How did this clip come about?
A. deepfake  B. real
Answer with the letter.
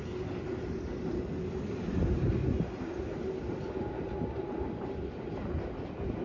B